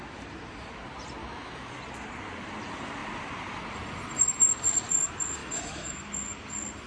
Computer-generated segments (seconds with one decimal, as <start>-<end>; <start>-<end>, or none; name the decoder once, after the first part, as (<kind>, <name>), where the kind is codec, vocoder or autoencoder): 1.2-1.7 (autoencoder, DAC-VAE); 5.4-6.0